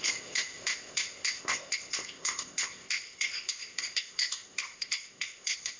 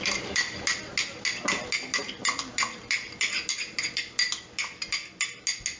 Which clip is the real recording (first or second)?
second